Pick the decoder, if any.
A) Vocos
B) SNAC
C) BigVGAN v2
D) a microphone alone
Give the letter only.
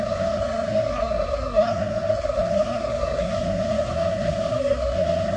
B